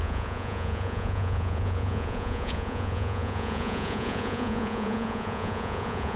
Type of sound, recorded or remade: remade